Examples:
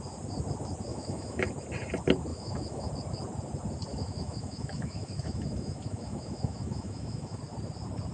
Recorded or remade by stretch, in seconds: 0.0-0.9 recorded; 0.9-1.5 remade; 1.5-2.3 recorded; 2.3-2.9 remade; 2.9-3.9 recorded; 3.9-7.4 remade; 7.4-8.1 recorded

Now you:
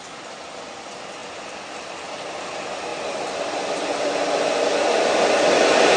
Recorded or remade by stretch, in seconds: 0.0-6.0 recorded